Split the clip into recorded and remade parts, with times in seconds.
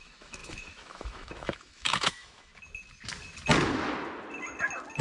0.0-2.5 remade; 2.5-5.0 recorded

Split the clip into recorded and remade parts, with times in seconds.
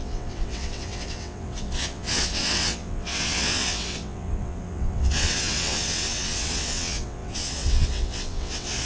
0.0-8.9 remade